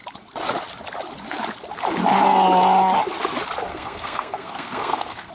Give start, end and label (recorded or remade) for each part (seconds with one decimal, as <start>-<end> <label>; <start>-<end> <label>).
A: 0.0-3.7 recorded; 3.7-5.3 remade